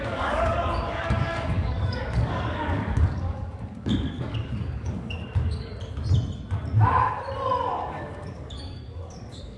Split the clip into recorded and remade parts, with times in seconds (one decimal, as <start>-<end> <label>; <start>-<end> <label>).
0.0-5.7 remade; 5.7-7.8 recorded; 7.8-9.6 remade